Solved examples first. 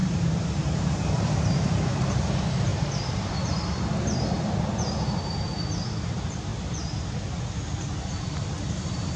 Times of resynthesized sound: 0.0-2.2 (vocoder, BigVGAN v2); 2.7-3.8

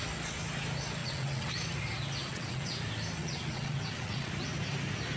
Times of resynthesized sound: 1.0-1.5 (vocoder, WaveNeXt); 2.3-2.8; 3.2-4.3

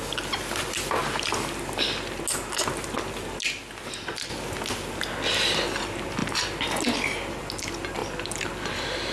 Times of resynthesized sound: none

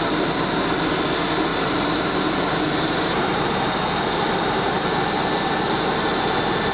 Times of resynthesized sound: 1.5-5.5 (vocoder, BigVGAN v2)

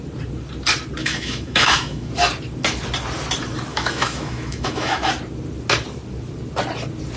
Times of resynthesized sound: 1.0-2.1 (autoencoder, DAC-VAE); 3.7-5.1

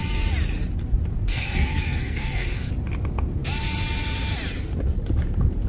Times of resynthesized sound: 1.3-2.7 (codec, SNAC)

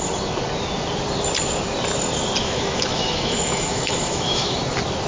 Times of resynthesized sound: 2.4-4.6 (autoencoder, DAC-VAE)